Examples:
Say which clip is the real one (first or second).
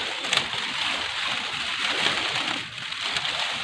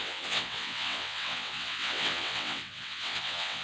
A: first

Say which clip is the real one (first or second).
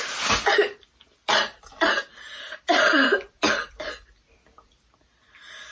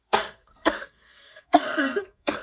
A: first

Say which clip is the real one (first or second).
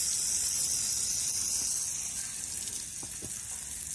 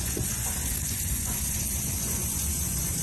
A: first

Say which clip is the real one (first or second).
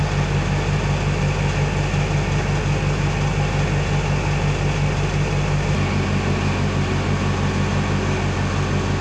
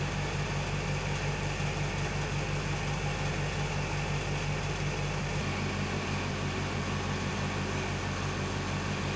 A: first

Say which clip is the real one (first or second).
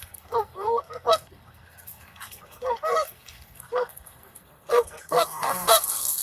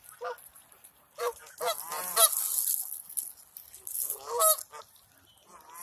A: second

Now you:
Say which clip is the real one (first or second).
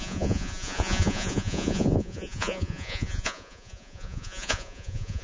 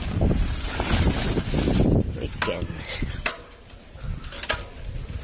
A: second